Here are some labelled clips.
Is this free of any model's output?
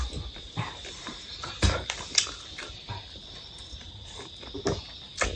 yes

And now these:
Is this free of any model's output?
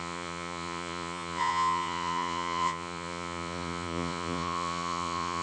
no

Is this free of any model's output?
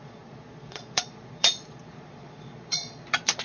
no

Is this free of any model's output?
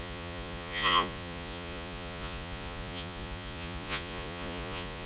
no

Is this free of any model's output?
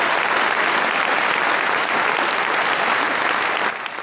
yes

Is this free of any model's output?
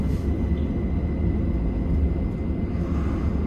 yes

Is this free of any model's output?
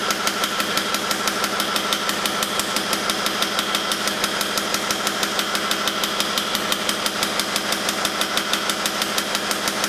yes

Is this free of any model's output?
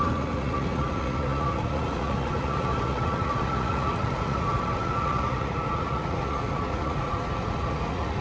no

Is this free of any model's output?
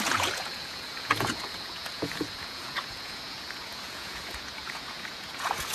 no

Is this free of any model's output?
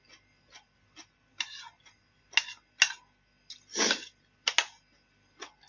yes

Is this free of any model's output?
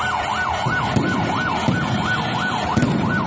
yes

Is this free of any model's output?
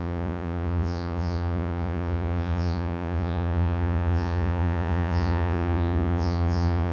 no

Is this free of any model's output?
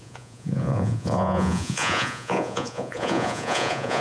no